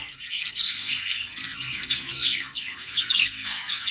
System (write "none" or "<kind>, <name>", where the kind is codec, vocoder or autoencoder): codec, SNAC